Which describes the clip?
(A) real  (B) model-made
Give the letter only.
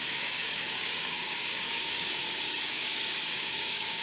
B